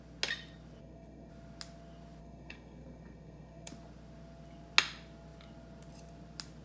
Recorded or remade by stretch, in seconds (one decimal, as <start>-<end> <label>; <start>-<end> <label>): 0.0-0.8 recorded; 0.8-1.3 remade; 1.3-2.2 recorded; 2.2-3.7 remade; 3.7-6.6 recorded